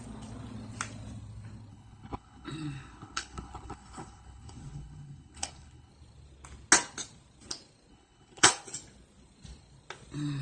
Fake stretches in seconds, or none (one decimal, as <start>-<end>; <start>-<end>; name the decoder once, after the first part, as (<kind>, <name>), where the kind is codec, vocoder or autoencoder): 1.7-5.9 (codec, HILCodec); 7.9-8.5